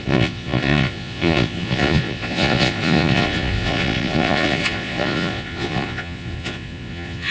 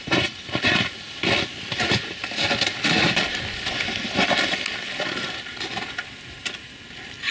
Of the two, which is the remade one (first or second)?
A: first